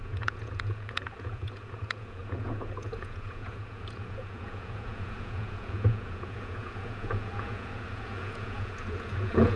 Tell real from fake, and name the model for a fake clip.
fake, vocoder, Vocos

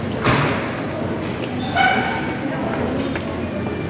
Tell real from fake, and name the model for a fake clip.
real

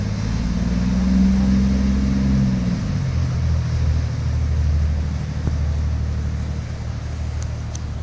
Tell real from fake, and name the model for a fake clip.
real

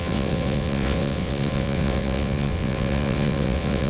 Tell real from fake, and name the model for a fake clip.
fake, vocoder, WaveNeXt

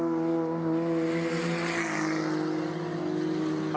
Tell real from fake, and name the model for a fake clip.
real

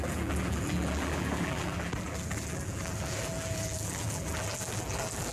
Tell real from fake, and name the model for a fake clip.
fake, vocoder, BigVGAN v2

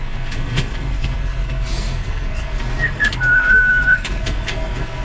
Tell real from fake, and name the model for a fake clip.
fake, codec, SNAC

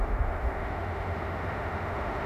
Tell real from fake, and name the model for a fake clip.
fake, autoencoder, DAC-VAE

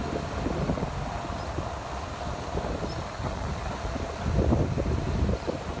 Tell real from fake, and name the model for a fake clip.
real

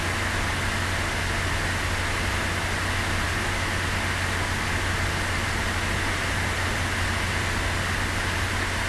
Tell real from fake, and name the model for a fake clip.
real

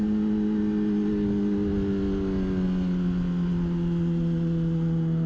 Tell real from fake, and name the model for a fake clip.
real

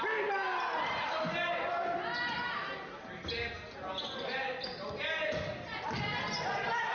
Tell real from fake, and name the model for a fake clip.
real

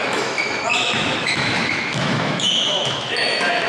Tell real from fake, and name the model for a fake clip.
fake, autoencoder, DAC-VAE